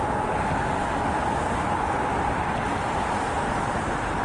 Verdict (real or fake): real